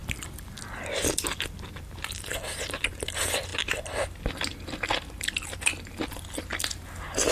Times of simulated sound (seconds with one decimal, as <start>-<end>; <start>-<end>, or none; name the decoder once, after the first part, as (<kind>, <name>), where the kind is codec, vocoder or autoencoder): none